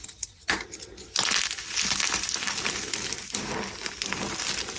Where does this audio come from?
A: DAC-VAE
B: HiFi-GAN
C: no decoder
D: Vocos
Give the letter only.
C